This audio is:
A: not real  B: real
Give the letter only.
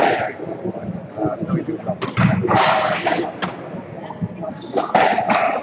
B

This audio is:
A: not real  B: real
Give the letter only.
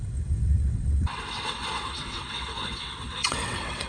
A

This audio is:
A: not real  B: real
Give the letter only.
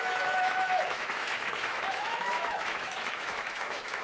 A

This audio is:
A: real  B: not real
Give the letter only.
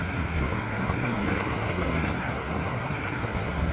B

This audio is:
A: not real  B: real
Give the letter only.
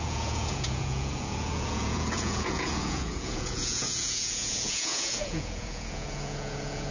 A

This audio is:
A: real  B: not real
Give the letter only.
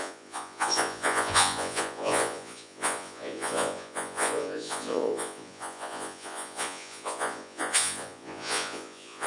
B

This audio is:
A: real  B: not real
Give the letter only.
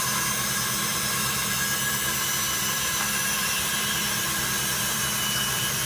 B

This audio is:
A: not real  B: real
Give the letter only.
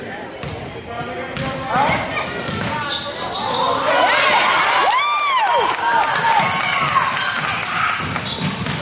B